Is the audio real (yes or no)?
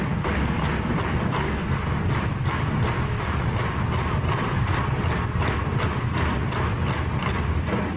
no